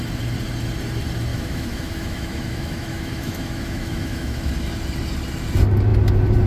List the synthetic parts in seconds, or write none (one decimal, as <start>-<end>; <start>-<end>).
1.3-4.5